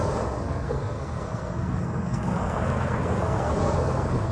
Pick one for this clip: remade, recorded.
remade